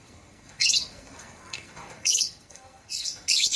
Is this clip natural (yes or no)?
no